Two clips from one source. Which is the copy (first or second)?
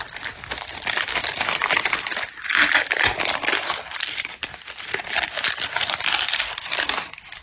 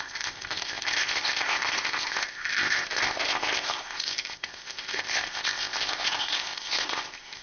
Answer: second